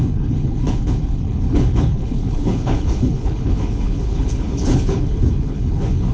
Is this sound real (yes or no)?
no